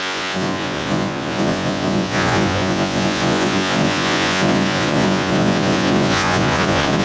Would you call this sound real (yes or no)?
no